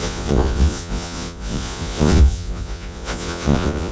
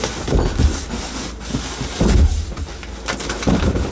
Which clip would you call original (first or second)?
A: second